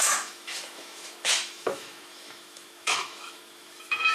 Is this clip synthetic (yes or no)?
yes